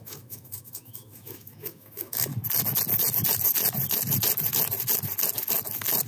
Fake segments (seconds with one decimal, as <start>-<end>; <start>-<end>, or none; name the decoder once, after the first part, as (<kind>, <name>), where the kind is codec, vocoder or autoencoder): 0.0-2.3 (autoencoder, DAC-VAE)